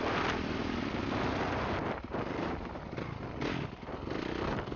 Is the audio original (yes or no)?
yes